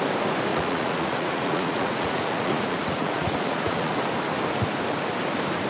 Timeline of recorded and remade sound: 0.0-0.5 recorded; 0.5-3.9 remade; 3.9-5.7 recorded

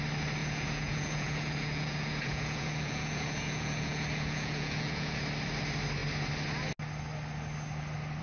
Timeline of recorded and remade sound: 0.0-0.4 recorded; 0.4-5.2 remade; 5.2-8.2 recorded

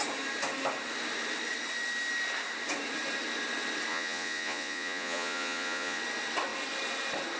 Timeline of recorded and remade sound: 0.0-3.9 recorded; 3.9-6.0 remade; 6.0-7.4 recorded

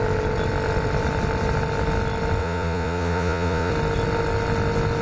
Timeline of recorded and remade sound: 0.0-2.4 recorded; 2.4-3.7 remade; 3.7-5.0 recorded

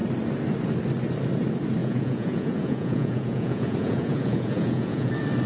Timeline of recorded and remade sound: 0.0-1.8 recorded; 1.8-5.1 remade; 5.1-5.5 recorded

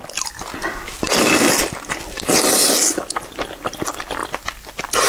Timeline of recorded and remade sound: 0.0-5.1 recorded